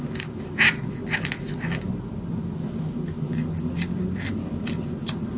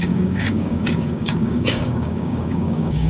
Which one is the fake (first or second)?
second